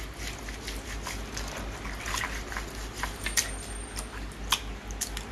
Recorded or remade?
recorded